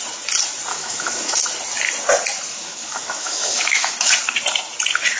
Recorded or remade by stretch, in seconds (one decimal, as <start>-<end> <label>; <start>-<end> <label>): 0.0-0.7 recorded; 0.7-1.4 remade; 1.4-2.5 recorded; 2.5-4.1 remade; 4.1-5.2 recorded